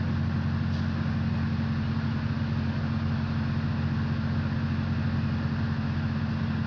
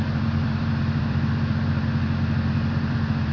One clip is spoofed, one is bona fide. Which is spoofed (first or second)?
second